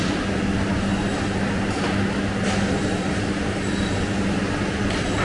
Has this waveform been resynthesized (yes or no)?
no